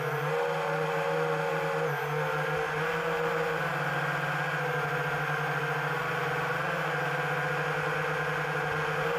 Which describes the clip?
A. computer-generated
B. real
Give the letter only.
B